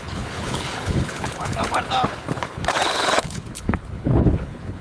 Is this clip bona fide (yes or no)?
no